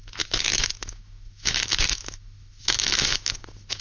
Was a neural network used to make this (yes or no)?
yes